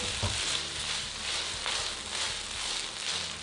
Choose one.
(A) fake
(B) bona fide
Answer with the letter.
B